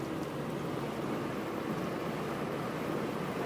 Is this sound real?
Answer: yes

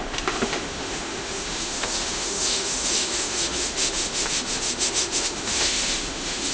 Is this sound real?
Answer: no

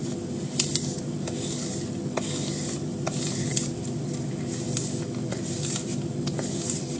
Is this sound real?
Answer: yes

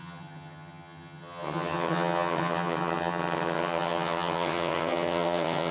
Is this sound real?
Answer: no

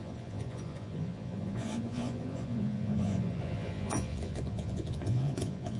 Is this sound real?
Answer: no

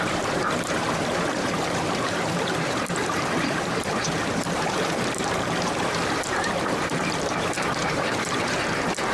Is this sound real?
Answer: no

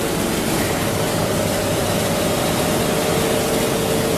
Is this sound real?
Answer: yes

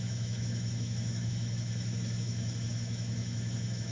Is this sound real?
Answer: no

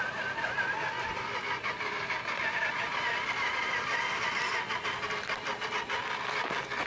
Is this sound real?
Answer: yes